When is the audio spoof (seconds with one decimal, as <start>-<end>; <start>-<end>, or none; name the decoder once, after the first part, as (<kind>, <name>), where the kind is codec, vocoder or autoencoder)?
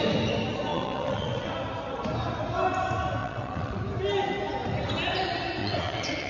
0.7-1.5 (vocoder, WaveNeXt); 3.2-3.8; 5.6-6.3